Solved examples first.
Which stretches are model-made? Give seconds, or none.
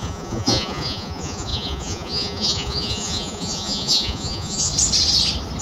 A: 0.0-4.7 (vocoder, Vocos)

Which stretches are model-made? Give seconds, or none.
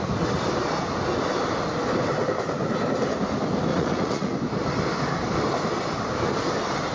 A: 3.7-4.3 (vocoder, Vocos)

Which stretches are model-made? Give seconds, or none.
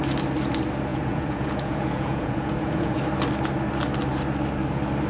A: 0.9-3.0 (vocoder, Vocos)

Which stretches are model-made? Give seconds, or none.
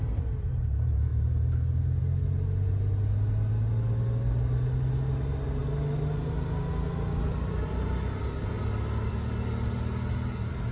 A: none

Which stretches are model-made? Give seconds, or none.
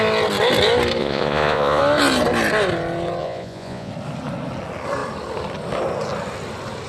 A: 1.0-1.8 (vocoder, Vocos); 3.2-3.9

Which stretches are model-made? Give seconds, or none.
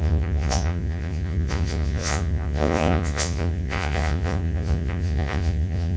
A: 0.0-6.0 (vocoder, Vocos)